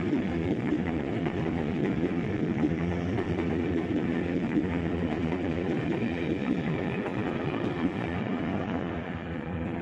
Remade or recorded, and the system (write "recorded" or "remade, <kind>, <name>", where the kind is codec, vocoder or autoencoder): remade, vocoder, Vocos